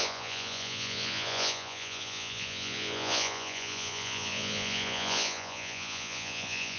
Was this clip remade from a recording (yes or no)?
yes